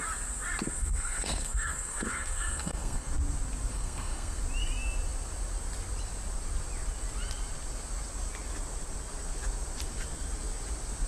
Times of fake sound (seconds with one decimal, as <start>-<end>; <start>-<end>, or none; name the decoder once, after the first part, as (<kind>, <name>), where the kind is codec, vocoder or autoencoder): 0.8-3.1 (codec, SNAC); 3.7-4.4

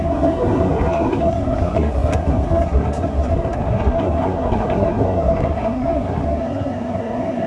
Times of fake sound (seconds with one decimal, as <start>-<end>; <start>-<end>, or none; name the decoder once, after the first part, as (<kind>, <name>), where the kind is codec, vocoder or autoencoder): 0.0-7.5 (codec, SNAC)